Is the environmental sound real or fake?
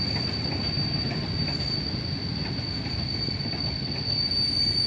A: real